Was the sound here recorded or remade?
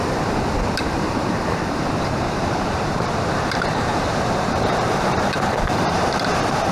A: remade